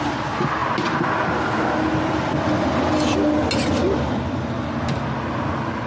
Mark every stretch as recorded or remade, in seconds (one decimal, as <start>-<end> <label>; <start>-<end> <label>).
0.0-5.9 recorded